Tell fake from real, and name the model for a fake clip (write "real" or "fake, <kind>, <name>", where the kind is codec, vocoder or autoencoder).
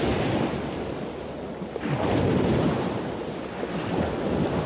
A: real